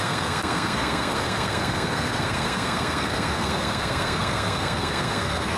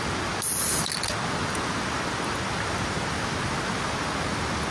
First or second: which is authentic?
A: second